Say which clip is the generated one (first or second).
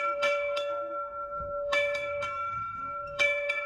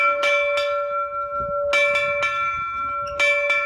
first